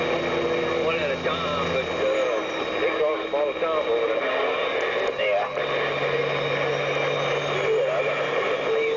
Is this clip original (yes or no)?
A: yes